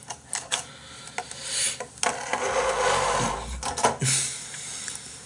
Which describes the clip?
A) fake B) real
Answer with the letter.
B